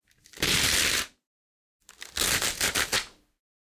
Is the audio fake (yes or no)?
no